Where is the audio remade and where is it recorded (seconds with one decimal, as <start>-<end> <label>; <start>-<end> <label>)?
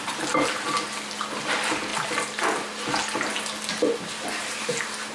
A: 0.0-5.1 recorded